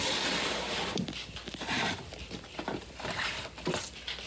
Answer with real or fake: real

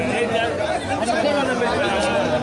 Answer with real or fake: real